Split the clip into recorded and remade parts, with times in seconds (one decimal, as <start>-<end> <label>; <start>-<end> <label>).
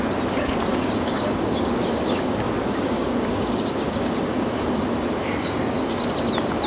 0.0-0.7 recorded; 0.7-4.7 remade; 4.7-5.4 recorded; 5.4-6.0 remade; 6.0-6.7 recorded